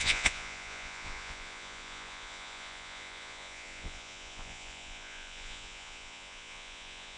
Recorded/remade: remade